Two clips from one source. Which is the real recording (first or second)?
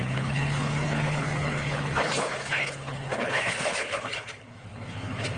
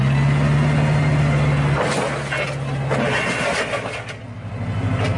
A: second